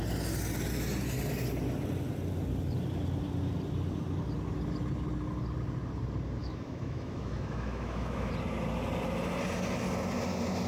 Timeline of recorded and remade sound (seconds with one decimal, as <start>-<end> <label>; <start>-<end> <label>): 0.0-6.4 recorded; 6.4-8.3 remade; 8.3-10.7 recorded